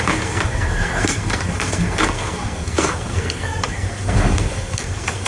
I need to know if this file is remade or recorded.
remade